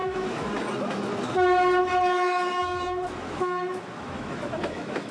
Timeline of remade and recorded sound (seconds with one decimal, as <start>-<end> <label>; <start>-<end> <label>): 0.0-0.5 remade; 0.5-1.8 recorded; 1.8-5.1 remade